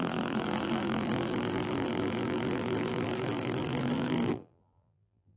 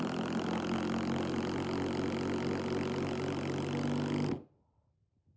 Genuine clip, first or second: second